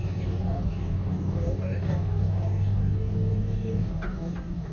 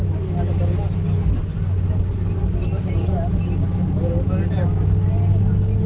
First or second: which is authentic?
second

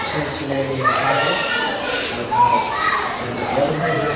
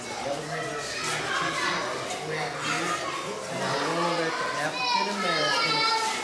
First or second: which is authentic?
second